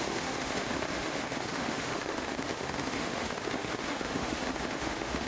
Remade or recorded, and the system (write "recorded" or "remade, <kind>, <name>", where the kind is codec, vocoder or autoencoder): remade, autoencoder, DAC-VAE